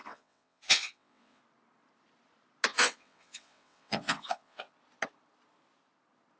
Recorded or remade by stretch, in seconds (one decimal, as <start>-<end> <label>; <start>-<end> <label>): 0.0-1.4 remade; 1.4-2.7 recorded; 2.7-4.7 remade; 4.7-6.4 recorded